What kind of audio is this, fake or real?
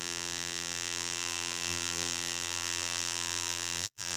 fake